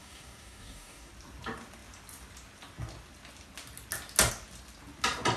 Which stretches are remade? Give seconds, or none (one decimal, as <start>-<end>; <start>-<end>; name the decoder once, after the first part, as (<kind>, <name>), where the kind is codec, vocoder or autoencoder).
0.0-1.1 (codec, DAC)